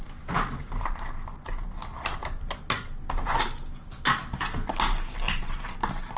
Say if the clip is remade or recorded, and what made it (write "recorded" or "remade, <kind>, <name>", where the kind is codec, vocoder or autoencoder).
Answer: recorded